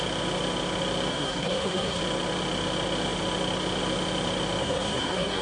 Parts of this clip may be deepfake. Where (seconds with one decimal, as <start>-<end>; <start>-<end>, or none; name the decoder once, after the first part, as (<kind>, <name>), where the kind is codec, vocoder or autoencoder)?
1.1-2.0 (codec, SNAC); 4.6-5.4